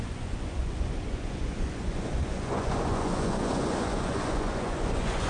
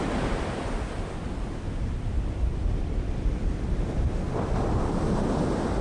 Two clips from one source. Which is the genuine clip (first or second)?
second